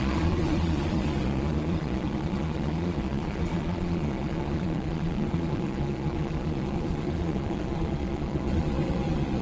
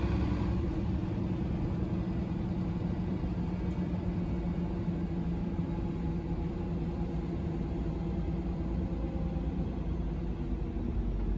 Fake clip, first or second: first